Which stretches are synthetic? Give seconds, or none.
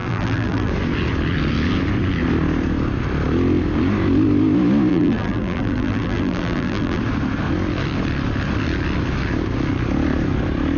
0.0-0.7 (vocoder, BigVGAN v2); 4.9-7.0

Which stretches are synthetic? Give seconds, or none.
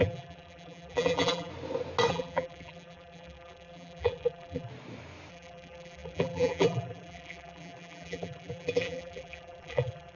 0.0-1.5 (vocoder, BigVGAN v2); 2.1-4.7; 5.3-10.2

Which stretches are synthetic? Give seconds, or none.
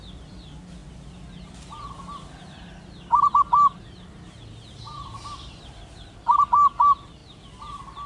none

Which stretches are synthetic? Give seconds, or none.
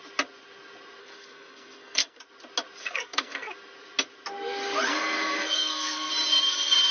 1.0-2.2 (codec, SNAC); 2.8-3.5; 4.9-6.1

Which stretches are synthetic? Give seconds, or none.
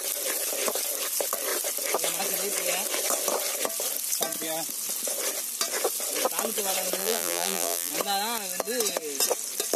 7.0-7.9 (vocoder, BigVGAN v2)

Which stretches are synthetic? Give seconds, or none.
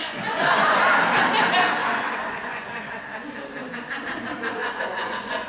0.0-0.8 (vocoder, Vocos); 1.8-2.9; 4.6-5.5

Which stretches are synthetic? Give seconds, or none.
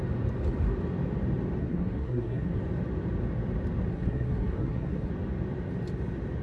1.6-2.6 (codec, SNAC); 3.9-5.1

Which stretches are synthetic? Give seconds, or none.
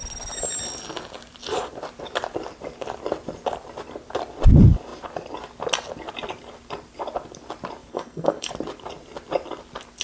7.9-8.5 (codec, SNAC)